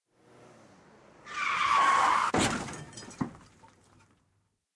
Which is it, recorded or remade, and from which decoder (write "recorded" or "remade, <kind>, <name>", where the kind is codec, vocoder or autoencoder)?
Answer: recorded